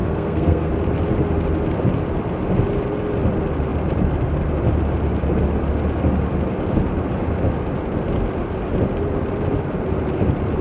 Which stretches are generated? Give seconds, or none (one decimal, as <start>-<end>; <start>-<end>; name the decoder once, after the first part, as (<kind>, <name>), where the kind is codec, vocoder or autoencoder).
0.0-0.7 (codec, SNAC)